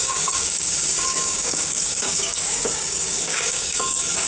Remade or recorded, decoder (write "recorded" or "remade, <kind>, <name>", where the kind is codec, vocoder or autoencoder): remade, codec, DAC